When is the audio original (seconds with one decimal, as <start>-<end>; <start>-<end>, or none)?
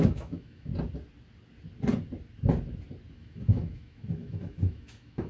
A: 0.7-3.1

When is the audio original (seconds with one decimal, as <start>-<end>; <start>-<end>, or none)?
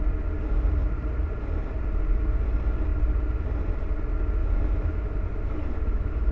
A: 0.0-4.4